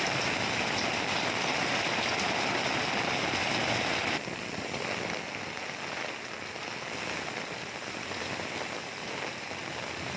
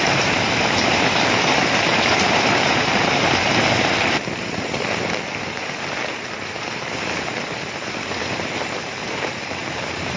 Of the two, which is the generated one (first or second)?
second